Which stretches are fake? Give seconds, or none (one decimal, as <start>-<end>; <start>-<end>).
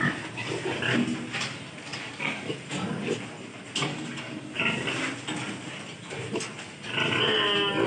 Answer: 1.9-2.5; 3.9-4.6